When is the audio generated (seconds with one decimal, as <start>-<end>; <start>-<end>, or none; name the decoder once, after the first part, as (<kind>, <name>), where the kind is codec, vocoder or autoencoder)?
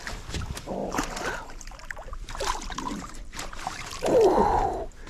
0.8-3.9 (vocoder, BigVGAN v2)